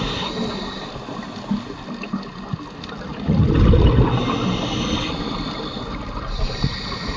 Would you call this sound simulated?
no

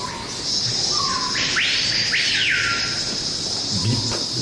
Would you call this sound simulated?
no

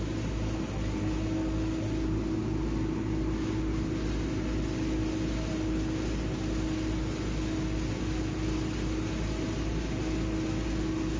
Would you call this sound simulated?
no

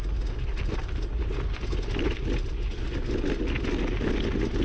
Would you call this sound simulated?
no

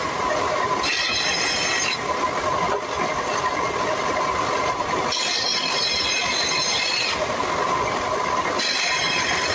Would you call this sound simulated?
no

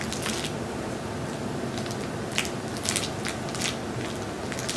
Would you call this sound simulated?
no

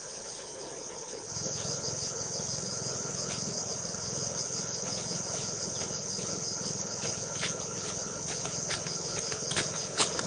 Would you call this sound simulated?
yes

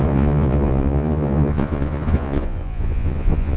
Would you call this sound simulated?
yes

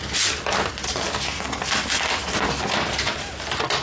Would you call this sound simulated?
no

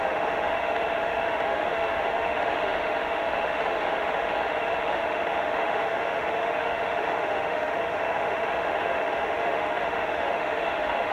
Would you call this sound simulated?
yes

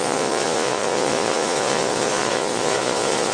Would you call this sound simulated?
yes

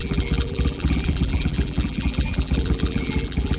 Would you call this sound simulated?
yes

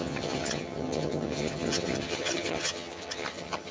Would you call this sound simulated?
yes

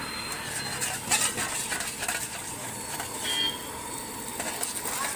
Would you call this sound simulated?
no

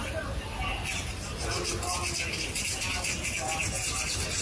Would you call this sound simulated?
no